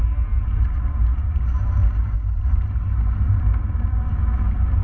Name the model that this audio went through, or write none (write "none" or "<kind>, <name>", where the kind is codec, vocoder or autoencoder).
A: none